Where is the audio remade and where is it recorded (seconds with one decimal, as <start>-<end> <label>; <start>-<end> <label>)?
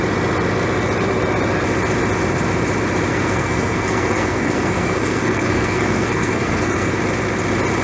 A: 0.0-3.1 recorded; 3.1-7.0 remade; 7.0-7.8 recorded